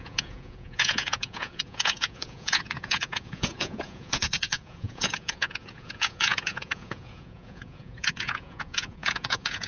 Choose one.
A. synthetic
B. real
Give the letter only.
A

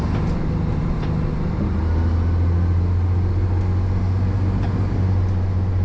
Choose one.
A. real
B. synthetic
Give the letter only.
A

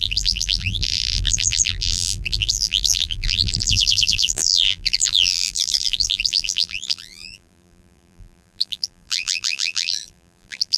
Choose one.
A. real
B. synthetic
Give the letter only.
B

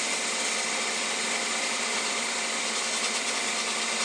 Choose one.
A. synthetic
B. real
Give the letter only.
B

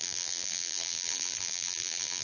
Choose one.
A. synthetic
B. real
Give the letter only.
A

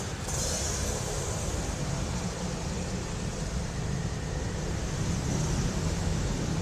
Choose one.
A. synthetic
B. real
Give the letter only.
A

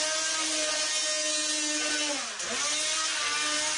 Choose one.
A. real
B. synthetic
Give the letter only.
A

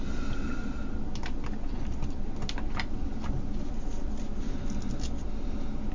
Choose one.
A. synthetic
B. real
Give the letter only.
B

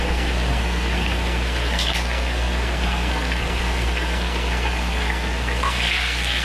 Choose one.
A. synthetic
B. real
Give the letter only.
A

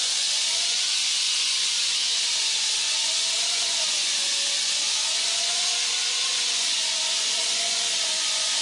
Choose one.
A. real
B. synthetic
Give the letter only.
B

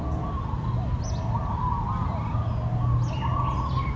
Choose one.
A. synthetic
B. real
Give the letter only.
B